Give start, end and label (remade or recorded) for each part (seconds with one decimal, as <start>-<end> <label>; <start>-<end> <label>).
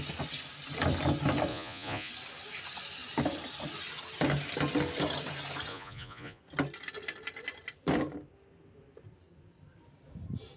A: 0.0-1.5 recorded; 1.5-2.1 remade; 2.1-5.7 recorded; 5.7-6.4 remade; 6.4-10.6 recorded